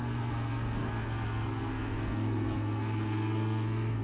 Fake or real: fake